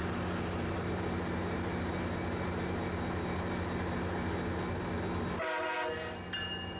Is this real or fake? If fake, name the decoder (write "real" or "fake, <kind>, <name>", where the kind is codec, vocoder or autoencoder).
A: real